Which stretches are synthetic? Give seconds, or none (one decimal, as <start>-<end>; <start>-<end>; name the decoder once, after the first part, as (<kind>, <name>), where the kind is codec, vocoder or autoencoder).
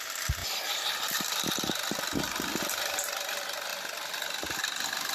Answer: 0.4-2.6 (vocoder, BigVGAN v2)